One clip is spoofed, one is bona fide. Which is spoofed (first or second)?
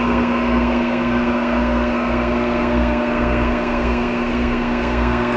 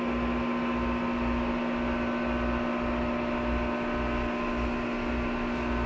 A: first